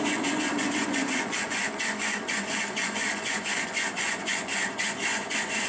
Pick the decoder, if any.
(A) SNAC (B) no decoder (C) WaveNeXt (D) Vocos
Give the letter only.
D